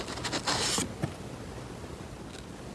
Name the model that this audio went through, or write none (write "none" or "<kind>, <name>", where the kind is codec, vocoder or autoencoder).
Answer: none